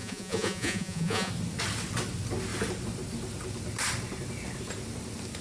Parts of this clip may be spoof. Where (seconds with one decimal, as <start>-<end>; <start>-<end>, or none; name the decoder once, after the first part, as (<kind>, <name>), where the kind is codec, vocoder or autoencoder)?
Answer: 0.0-1.3 (vocoder, Vocos)